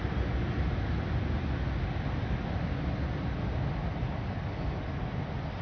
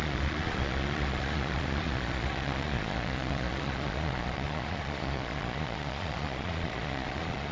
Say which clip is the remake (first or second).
second